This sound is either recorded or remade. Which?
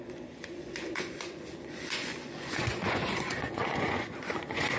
remade